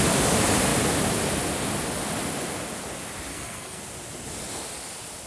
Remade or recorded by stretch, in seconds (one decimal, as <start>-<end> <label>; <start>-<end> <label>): 0.0-3.3 recorded; 3.3-3.8 remade; 3.8-5.3 recorded